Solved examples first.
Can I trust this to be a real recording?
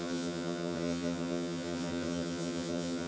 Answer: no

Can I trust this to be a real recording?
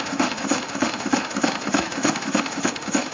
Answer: no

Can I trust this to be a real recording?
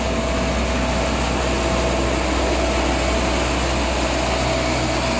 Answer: yes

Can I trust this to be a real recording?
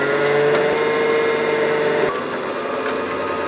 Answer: yes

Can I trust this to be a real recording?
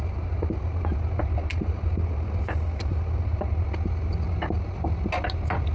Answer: yes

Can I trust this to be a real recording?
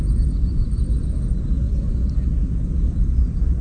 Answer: yes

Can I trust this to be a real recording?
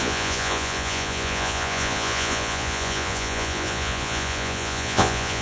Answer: no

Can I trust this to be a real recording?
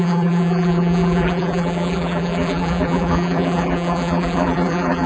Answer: no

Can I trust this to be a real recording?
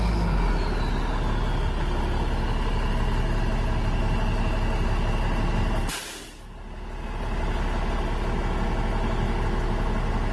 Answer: yes